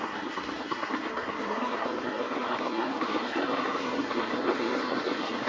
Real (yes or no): no